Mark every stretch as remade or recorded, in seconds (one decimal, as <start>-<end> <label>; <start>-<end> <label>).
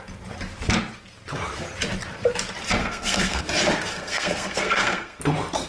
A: 0.0-2.8 recorded; 2.8-3.4 remade; 3.4-3.9 recorded; 3.9-5.2 remade; 5.2-5.7 recorded